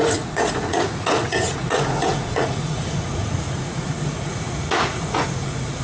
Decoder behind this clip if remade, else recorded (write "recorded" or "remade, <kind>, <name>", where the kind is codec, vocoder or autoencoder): remade, vocoder, Vocos